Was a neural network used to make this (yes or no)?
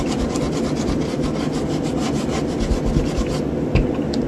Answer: no